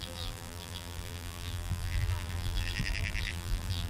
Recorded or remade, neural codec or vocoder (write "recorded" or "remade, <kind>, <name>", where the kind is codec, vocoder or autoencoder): remade, vocoder, BigVGAN v2